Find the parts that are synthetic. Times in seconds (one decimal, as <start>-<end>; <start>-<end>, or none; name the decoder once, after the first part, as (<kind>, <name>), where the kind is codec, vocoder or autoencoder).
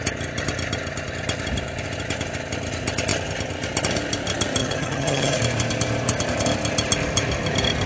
4.6-5.4 (vocoder, HiFi-GAN)